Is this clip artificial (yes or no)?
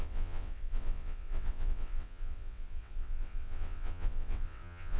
yes